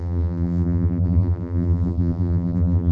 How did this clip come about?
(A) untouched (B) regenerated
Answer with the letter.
B